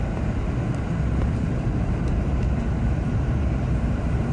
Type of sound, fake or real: fake